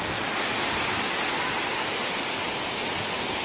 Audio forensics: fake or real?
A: real